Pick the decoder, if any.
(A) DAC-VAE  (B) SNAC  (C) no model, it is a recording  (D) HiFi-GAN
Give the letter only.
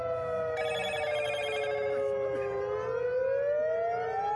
C